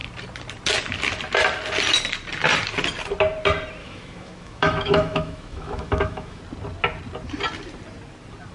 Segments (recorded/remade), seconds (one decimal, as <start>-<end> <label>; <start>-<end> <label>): 0.0-3.8 recorded; 3.8-6.4 remade; 6.4-8.5 recorded